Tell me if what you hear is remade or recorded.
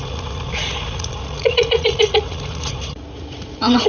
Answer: remade